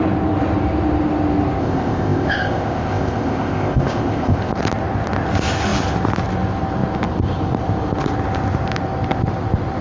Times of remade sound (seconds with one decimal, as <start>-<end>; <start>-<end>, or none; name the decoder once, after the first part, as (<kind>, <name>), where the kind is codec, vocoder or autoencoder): 1.6-4.5 (codec, ZipCodec)